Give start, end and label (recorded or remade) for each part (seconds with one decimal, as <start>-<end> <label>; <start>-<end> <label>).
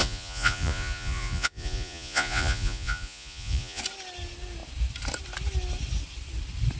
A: 0.0-3.8 remade; 3.8-6.8 recorded